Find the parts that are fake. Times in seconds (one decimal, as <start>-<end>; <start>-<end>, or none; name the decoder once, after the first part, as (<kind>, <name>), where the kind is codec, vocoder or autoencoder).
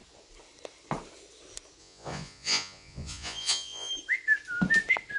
1.8-3.9 (vocoder, Vocos)